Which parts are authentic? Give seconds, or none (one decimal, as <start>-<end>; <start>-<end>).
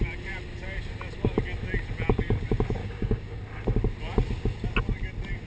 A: 0.0-2.8; 3.4-5.5